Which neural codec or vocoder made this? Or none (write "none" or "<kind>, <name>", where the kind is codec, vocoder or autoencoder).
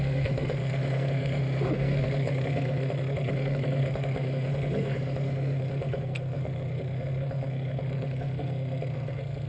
codec, SNAC